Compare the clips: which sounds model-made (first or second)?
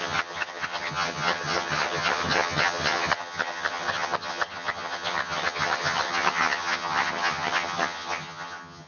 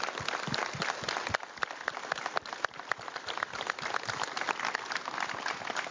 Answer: first